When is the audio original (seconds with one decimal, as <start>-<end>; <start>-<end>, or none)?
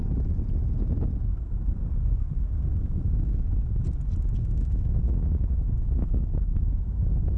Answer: 0.0-1.3; 3.4-4.4